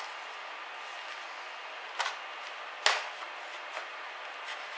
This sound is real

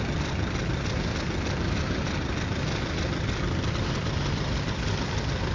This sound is real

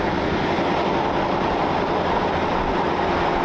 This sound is real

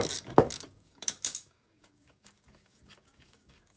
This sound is fake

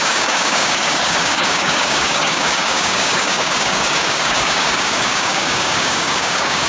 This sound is fake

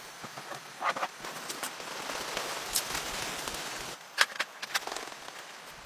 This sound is real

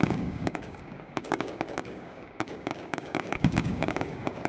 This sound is fake